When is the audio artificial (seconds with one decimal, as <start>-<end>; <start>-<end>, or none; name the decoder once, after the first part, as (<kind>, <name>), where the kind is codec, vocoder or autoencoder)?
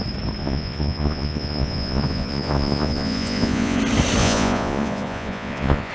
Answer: 0.4-3.8 (vocoder, Vocos); 4.2-5.9